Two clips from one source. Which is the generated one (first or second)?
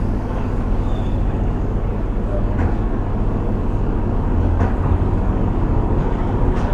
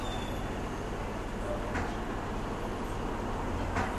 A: first